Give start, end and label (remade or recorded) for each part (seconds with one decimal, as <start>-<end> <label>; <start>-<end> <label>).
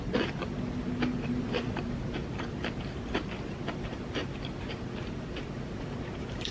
0.0-2.2 remade; 2.2-2.8 recorded; 2.8-6.5 remade